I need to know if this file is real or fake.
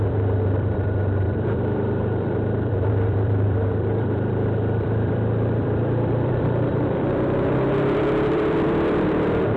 fake